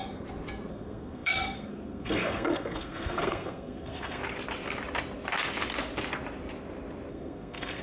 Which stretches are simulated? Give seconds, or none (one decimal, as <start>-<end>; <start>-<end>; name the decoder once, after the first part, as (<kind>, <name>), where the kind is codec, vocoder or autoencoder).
0.7-4.2 (codec, SNAC); 7.1-7.8